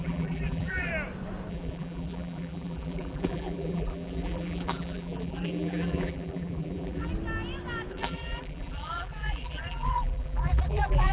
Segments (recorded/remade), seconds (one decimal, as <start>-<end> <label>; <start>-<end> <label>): 0.0-0.9 remade; 0.9-1.5 recorded; 1.5-7.1 remade; 7.1-7.9 recorded; 7.9-11.1 remade